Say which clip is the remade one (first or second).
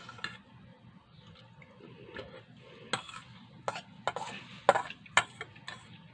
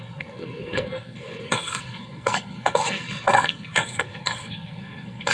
second